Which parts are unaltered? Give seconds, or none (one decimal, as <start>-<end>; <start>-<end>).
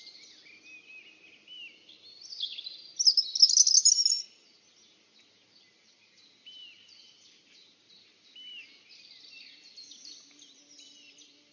0.0-11.5